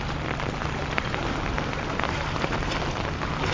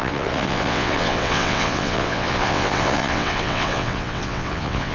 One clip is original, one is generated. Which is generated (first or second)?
second